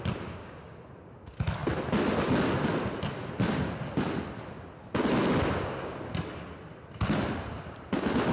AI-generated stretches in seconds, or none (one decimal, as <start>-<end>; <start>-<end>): 0.4-0.9